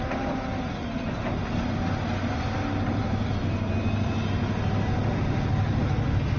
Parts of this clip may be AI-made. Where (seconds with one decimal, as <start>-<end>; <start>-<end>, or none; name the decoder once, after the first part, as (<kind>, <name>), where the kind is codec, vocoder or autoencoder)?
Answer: none

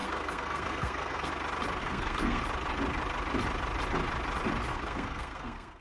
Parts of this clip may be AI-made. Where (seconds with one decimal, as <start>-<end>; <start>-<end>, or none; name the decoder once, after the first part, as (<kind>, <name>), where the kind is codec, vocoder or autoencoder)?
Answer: 0.0-1.3 (codec, SNAC); 1.8-2.4; 4.7-5.8

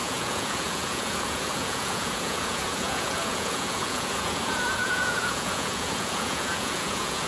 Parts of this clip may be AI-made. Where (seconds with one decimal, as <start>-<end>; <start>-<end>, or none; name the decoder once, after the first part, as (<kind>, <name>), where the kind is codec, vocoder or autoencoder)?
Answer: 0.0-7.3 (vocoder, Vocos)